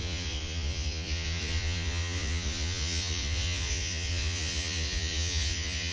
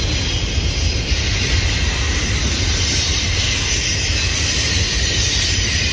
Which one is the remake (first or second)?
first